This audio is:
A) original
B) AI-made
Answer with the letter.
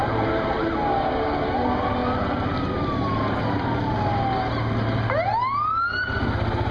A